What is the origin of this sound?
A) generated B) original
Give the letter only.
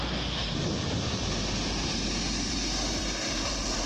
B